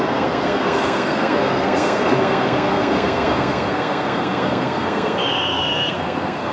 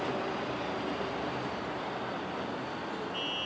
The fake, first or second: first